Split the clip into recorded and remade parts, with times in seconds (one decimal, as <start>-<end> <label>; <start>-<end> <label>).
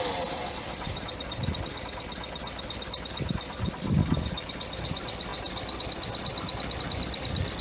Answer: 0.0-7.6 recorded